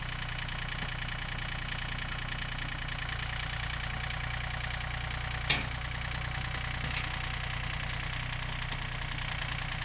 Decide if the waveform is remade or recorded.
recorded